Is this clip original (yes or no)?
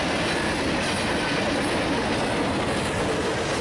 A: yes